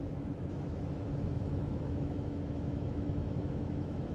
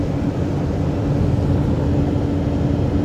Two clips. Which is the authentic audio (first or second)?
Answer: second